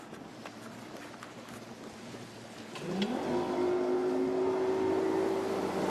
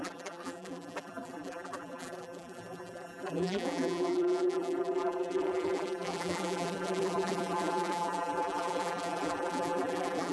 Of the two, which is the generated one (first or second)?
second